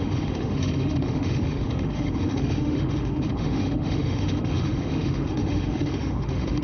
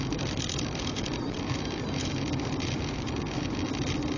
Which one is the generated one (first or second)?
first